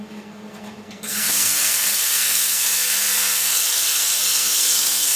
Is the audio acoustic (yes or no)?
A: no